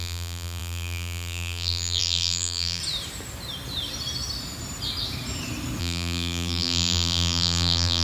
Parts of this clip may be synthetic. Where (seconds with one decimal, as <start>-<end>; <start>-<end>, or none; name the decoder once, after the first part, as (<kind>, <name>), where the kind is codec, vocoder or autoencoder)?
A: 0.0-2.8 (vocoder, BigVGAN v2); 5.8-8.0